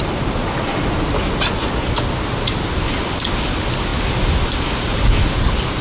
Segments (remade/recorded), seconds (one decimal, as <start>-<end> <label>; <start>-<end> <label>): 0.0-5.8 recorded